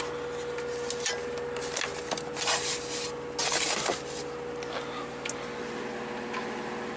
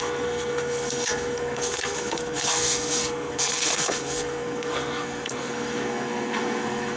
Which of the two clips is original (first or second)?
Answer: first